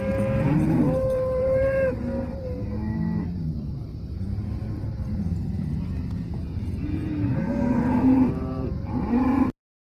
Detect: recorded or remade remade